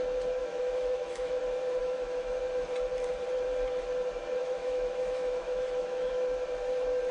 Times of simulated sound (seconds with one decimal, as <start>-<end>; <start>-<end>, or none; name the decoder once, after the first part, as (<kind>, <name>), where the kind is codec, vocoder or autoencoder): 0.4-1.4 (autoencoder, DAC-VAE); 1.8-2.4; 4.4-6.1